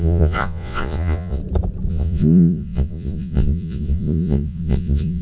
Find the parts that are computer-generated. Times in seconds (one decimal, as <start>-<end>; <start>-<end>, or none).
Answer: 0.0-1.4; 1.9-5.2